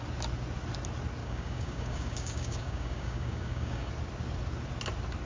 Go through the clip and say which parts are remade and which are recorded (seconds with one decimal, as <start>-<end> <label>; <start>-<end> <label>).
0.0-1.2 recorded; 1.2-3.9 remade; 3.9-5.3 recorded